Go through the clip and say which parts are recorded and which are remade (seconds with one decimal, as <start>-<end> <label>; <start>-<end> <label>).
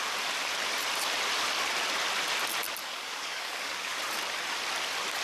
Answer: 0.0-2.8 recorded; 2.8-4.0 remade; 4.0-5.2 recorded